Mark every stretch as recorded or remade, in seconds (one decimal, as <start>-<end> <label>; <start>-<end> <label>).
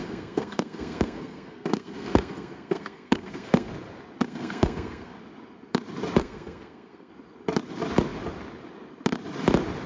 0.0-3.7 remade; 3.7-4.2 recorded; 4.2-5.1 remade; 5.1-6.2 recorded; 6.2-7.1 remade; 7.1-9.9 recorded